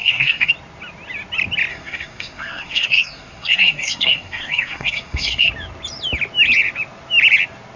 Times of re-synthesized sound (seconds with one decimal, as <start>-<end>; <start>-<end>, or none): 0.0-0.5; 1.7-5.5

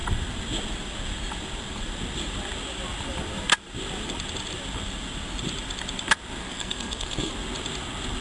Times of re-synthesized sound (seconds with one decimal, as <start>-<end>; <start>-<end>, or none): 6.4-7.3